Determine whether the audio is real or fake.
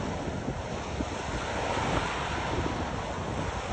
real